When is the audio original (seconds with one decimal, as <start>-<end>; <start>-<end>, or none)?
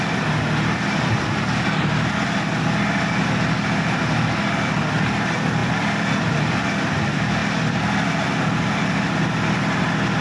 0.0-5.6; 6.7-7.4